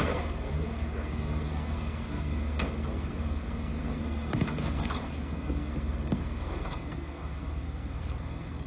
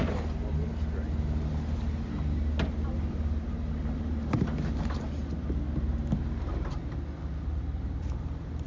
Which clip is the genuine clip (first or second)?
second